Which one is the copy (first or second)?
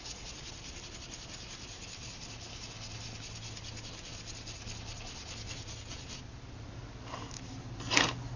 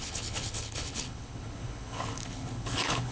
second